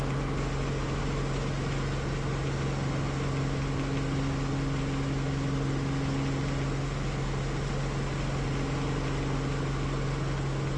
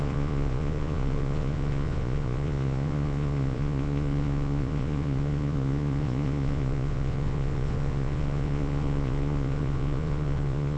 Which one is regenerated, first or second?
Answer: second